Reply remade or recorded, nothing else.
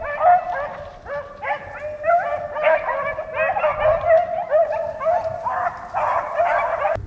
recorded